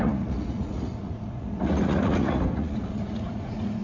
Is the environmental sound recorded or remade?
remade